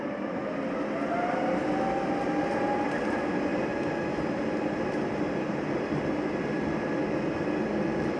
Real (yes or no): yes